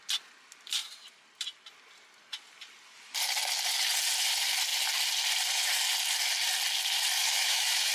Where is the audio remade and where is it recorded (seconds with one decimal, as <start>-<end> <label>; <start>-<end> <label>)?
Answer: 0.0-7.2 recorded; 7.2-7.9 remade